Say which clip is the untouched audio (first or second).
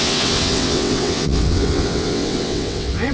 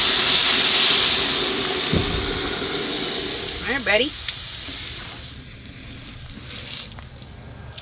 second